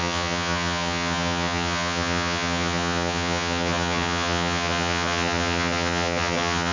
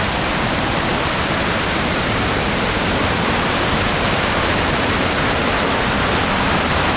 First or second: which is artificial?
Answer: first